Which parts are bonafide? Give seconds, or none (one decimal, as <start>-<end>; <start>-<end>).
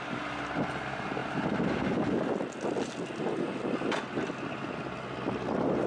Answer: 0.0-5.9